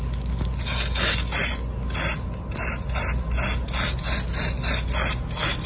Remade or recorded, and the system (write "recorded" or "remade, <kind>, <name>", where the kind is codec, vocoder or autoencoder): recorded